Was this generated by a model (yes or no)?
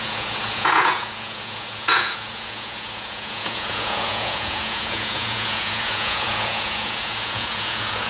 yes